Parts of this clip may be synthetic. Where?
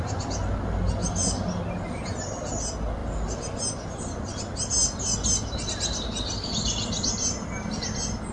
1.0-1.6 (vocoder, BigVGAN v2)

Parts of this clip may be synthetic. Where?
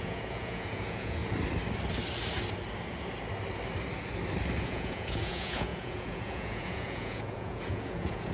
0.0-1.2 (vocoder, Vocos); 4.6-8.3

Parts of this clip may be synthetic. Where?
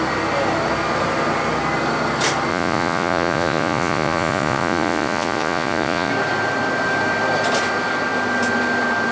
2.5-6.1 (vocoder, Vocos)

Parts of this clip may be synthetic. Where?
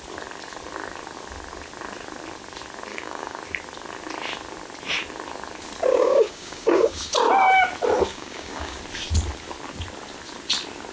2.9-3.4 (codec, DAC); 5.9-7.1; 8.1-8.8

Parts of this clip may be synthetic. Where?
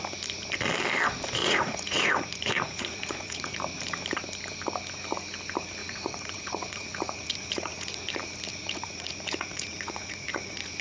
1.4-3.6 (vocoder, Vocos); 5.8-8.0; 8.5-10.8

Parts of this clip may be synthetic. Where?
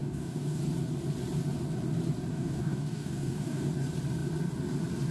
0.0-0.6 (codec, DAC); 2.3-3.7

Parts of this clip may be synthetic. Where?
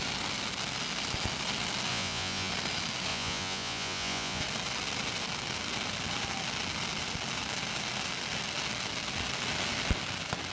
1.9-2.5 (vocoder, Vocos); 3.1-4.4